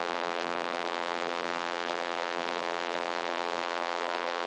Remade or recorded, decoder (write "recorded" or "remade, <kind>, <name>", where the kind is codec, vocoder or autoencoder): remade, vocoder, BigVGAN v2